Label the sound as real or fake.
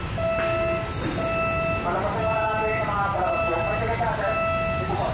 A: real